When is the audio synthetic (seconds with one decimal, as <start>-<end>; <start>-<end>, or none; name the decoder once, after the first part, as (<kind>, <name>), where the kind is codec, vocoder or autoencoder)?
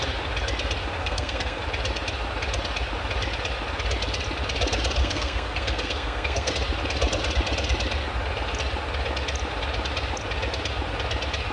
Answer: 1.0-1.6 (codec, SNAC); 5.0-6.5